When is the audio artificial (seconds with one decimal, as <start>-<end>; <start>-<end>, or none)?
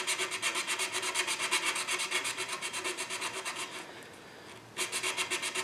2.2-4.3